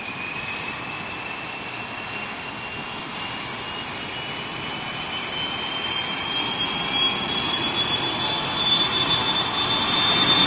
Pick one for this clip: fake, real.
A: real